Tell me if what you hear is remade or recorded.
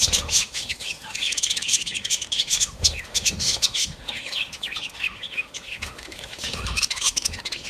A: remade